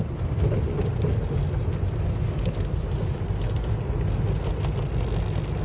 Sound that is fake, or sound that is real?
real